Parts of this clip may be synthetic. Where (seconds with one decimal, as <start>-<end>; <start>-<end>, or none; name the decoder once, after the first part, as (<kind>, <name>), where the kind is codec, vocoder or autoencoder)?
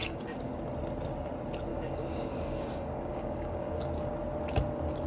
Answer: 0.0-0.6 (codec, DAC); 1.7-3.7